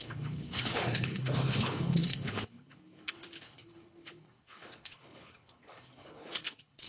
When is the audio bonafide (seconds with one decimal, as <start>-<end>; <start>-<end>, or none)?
none